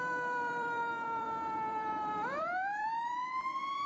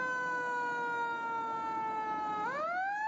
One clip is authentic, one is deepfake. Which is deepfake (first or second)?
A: first